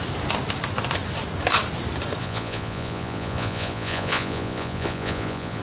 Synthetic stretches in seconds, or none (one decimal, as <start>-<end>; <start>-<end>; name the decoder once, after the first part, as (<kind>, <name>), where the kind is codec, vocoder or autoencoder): 2.2-5.6 (vocoder, Vocos)